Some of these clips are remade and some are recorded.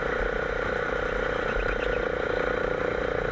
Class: recorded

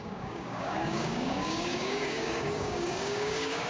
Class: remade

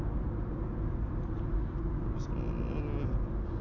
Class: recorded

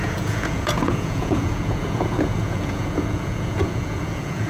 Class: remade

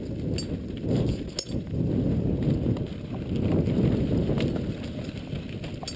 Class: recorded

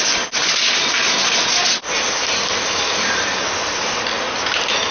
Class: recorded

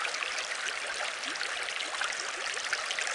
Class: recorded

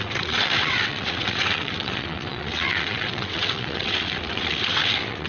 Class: remade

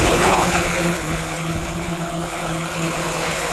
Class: remade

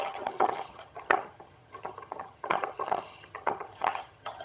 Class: remade